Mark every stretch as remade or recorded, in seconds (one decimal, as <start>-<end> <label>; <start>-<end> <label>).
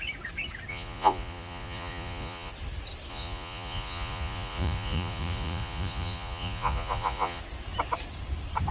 0.0-0.7 recorded; 0.7-2.5 remade; 2.5-3.1 recorded; 3.1-7.4 remade; 7.4-8.7 recorded